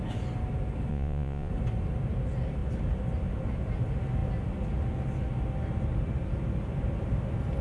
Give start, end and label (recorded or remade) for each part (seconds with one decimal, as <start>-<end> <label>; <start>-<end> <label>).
0.0-0.9 recorded; 0.9-1.5 remade; 1.5-7.6 recorded

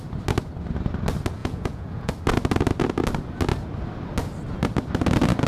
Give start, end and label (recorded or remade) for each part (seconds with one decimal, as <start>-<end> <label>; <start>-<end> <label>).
0.0-1.4 recorded; 1.4-2.1 remade; 2.1-5.5 recorded

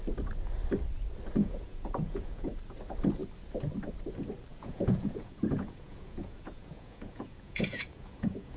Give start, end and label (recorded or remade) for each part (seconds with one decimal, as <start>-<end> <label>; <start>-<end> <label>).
0.0-1.4 recorded; 1.4-2.6 remade; 2.6-4.5 recorded; 4.5-8.6 remade

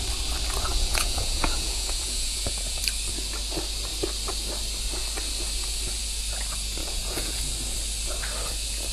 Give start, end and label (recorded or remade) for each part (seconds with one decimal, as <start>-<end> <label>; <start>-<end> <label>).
0.0-0.7 recorded; 0.7-2.8 remade; 2.8-6.8 recorded; 6.8-7.4 remade; 7.4-8.9 recorded

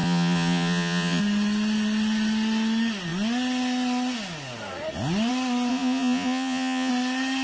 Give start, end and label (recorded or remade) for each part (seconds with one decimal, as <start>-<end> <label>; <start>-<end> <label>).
0.0-1.2 remade; 1.2-5.7 recorded; 5.7-6.9 remade; 6.9-7.4 recorded

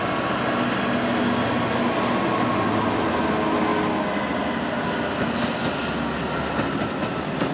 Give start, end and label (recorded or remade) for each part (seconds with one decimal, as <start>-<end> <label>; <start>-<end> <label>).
0.0-7.5 recorded

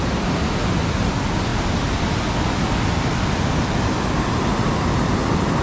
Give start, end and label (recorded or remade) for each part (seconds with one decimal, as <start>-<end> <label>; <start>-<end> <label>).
0.0-5.6 recorded